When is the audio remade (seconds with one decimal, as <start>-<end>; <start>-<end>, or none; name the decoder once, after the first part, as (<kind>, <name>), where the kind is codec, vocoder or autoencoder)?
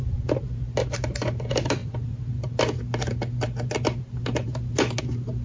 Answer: none